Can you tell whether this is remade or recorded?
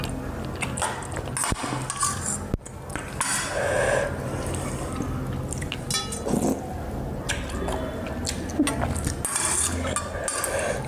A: recorded